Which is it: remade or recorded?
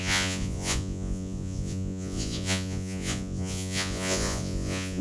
remade